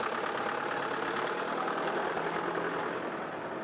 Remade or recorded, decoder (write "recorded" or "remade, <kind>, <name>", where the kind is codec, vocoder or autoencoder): recorded